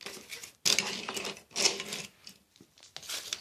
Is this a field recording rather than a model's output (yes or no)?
yes